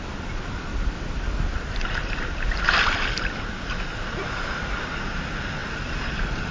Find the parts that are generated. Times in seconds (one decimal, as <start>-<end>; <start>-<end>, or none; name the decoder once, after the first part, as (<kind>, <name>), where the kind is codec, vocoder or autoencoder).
0.0-6.5 (vocoder, BigVGAN v2)